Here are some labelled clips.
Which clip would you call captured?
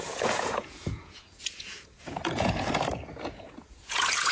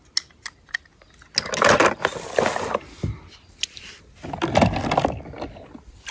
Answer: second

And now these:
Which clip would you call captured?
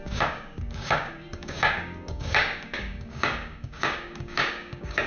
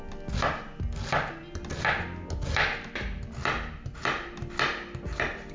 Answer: second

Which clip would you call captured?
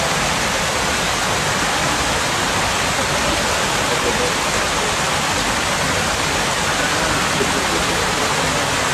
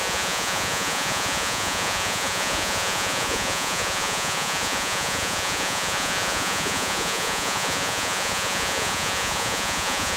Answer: first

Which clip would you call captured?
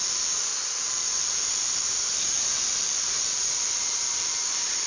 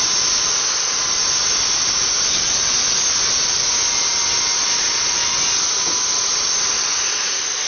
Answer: second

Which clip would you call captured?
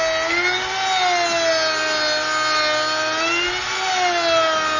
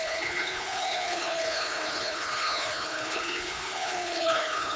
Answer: first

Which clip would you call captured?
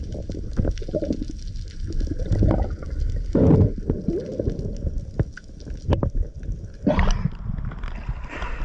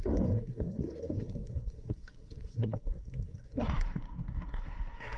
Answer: first